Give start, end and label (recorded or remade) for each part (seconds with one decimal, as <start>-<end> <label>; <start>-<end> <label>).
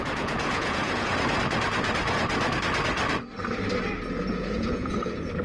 0.0-1.1 remade; 1.1-4.3 recorded; 4.3-5.4 remade